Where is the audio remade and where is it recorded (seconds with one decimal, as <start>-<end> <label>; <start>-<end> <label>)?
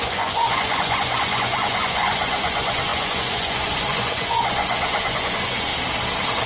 0.0-5.7 remade; 5.7-6.5 recorded